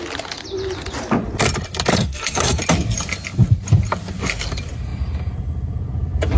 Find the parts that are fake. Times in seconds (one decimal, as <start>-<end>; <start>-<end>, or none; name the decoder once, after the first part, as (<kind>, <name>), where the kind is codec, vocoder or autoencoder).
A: 1.9-2.6 (codec, SNAC)